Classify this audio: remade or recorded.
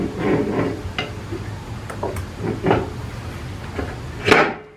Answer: recorded